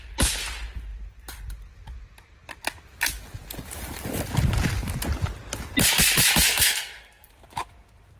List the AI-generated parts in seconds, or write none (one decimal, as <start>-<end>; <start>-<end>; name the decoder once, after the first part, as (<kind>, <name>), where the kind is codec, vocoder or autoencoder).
6.5-7.3 (codec, SNAC)